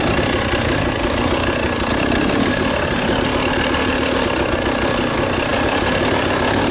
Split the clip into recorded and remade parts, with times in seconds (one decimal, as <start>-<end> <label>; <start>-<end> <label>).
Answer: 0.0-6.7 recorded